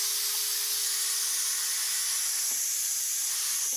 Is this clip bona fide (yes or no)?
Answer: yes